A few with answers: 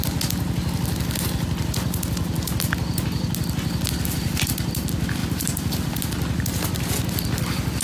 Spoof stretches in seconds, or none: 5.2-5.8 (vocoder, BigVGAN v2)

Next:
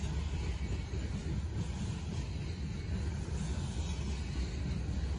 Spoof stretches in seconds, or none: none

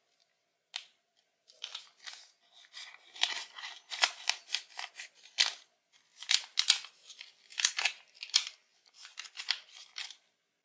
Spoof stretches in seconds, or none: 0.9-1.9 (vocoder, BigVGAN v2)